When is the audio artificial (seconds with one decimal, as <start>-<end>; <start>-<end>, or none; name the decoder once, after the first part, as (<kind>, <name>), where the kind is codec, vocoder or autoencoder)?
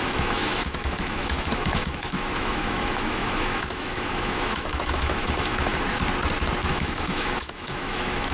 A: 0.0-5.7 (autoencoder, DAC-VAE); 6.7-8.3